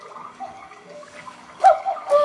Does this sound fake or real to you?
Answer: fake